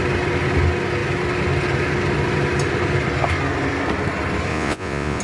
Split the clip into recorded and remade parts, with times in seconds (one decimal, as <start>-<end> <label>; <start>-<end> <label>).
0.0-4.5 recorded; 4.5-5.2 remade

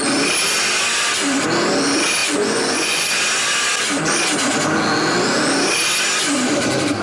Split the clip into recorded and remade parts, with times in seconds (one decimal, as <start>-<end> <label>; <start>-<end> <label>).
0.0-2.2 recorded; 2.2-3.1 remade; 3.1-7.0 recorded

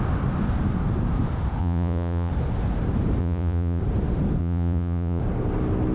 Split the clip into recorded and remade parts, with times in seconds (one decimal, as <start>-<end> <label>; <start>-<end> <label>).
0.0-1.6 recorded; 1.6-2.3 remade; 2.3-3.2 recorded; 3.2-3.8 remade; 3.8-4.4 recorded; 4.4-5.2 remade; 5.2-5.9 recorded

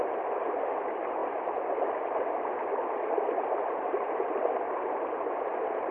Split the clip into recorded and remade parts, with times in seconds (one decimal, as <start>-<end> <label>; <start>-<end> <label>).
0.0-5.9 recorded

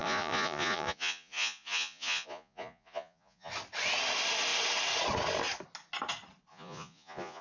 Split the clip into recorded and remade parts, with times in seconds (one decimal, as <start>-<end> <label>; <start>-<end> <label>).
0.0-3.5 remade; 3.5-6.5 recorded; 6.5-7.4 remade

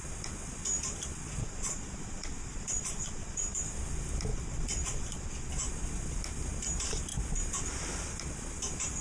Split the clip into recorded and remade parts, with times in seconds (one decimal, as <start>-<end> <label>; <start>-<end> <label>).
0.0-1.4 recorded; 1.4-3.6 remade; 3.6-4.3 recorded; 4.3-5.5 remade; 5.5-9.0 recorded

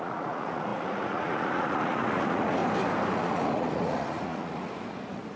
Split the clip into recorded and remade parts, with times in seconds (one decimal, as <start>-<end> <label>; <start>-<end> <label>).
0.0-2.6 remade; 2.6-3.1 recorded; 3.1-5.4 remade

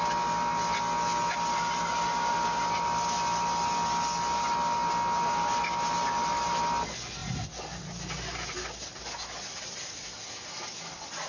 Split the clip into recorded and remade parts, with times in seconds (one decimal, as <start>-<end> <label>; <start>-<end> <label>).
0.0-11.3 recorded